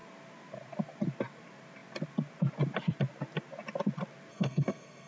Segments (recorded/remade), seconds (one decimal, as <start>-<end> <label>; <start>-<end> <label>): 0.0-4.3 recorded; 4.3-5.1 remade